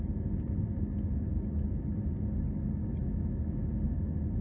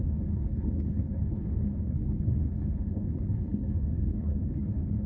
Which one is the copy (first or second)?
second